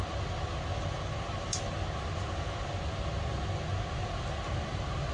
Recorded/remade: recorded